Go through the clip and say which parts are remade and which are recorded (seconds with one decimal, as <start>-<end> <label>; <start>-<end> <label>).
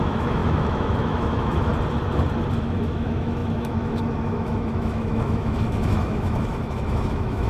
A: 0.0-1.7 remade; 1.7-2.6 recorded; 2.6-7.5 remade